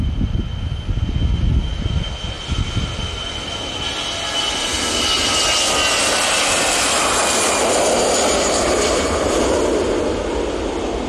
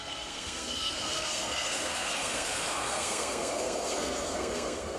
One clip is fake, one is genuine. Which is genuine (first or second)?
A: first